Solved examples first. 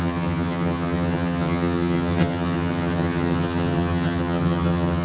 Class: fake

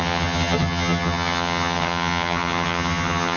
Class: fake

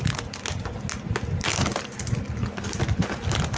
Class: real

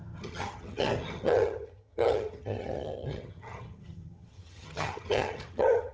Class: fake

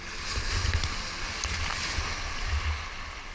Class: real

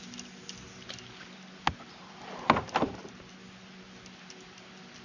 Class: real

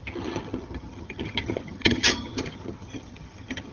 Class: fake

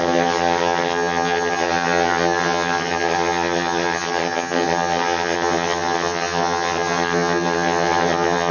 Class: fake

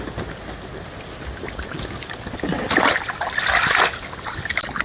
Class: real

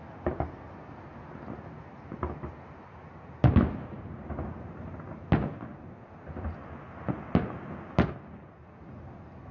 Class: real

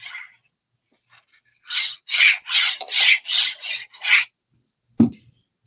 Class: real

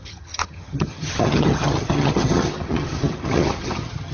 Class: fake